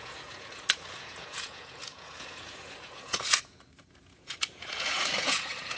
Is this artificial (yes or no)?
yes